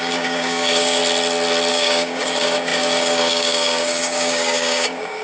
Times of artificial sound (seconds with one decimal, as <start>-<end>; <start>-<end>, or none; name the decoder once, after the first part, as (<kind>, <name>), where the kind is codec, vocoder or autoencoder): 0.0-1.0 (codec, DAC); 1.7-5.2